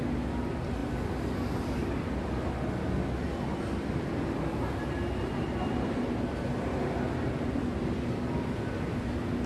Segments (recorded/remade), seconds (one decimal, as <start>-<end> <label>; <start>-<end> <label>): 0.0-9.5 recorded